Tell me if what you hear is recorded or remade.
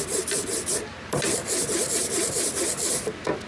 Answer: recorded